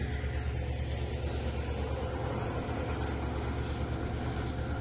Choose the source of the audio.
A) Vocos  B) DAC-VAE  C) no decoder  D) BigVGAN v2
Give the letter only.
C